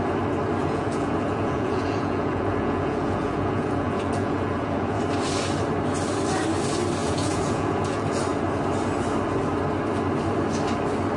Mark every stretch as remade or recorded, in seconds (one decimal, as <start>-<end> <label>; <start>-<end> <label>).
0.0-0.6 recorded; 0.6-5.0 remade; 5.0-7.0 recorded; 7.0-8.2 remade; 8.2-11.2 recorded